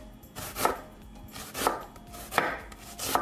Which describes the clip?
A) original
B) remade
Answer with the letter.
A